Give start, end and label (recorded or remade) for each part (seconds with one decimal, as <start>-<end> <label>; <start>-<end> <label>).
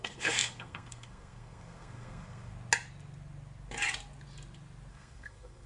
0.0-2.5 remade; 2.5-4.9 recorded; 4.9-5.7 remade